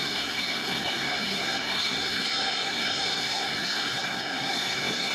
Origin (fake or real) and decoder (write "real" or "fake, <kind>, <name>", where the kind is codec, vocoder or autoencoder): fake, codec, SNAC